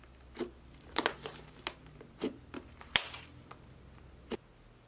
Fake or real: real